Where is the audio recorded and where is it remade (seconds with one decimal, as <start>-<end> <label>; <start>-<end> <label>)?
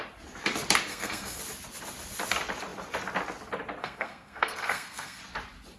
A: 0.0-0.9 recorded; 0.9-1.4 remade; 1.4-3.8 recorded; 3.8-5.2 remade; 5.2-5.8 recorded